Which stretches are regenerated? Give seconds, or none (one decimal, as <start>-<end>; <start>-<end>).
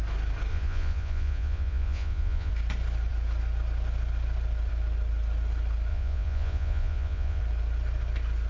0.5-2.5; 5.9-7.4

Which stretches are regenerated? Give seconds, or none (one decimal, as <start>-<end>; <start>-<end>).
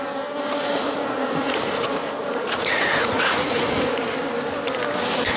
0.7-3.9